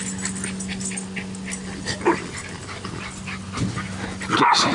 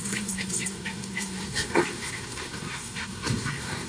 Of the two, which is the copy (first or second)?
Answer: second